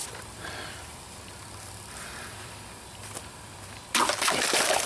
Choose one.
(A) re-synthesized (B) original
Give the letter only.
A